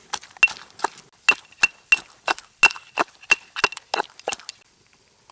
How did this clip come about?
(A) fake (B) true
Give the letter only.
B